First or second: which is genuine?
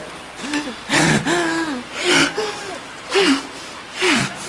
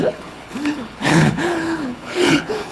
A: first